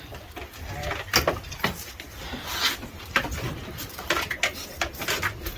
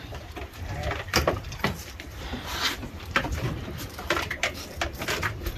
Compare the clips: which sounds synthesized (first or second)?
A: second